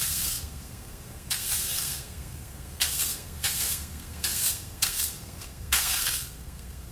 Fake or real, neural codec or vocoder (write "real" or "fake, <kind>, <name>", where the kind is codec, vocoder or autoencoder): fake, codec, SNAC